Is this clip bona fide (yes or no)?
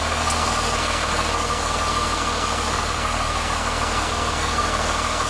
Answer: no